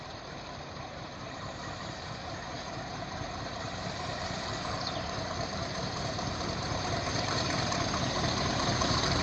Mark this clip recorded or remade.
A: remade